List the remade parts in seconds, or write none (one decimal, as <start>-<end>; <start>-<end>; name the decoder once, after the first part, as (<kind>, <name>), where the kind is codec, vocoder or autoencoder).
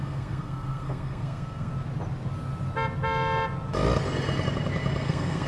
0.0-1.7 (codec, SNAC); 5.0-5.5